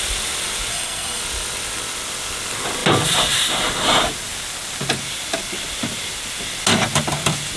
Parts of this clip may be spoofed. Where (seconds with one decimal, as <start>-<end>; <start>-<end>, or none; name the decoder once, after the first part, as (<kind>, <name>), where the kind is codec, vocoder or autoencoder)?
0.7-1.2 (codec, SNAC)